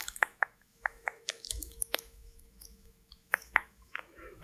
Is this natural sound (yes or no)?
no